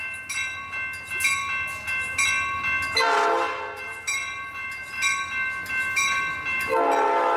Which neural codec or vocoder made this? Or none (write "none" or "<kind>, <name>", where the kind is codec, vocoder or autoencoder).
none